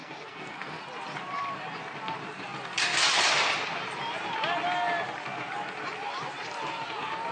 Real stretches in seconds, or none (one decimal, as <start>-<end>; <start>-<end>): 0.8-7.3